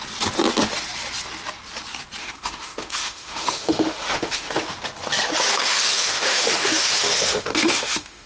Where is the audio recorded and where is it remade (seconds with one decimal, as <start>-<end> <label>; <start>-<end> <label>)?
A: 0.0-2.2 recorded; 2.2-4.5 remade; 4.5-5.5 recorded; 5.5-8.3 remade